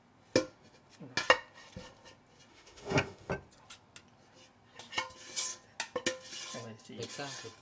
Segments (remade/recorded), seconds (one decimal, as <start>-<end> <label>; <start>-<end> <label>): 0.0-2.5 recorded; 2.5-3.3 remade; 3.3-7.6 recorded